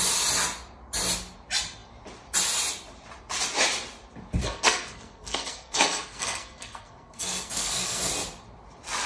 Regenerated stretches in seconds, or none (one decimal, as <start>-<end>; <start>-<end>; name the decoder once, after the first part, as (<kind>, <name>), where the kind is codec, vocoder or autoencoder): 4.4-8.1 (codec, SNAC)